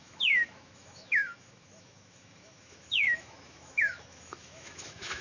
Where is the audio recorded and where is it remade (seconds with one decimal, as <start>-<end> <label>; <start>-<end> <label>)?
0.0-5.2 remade